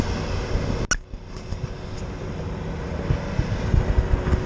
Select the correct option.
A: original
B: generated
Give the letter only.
A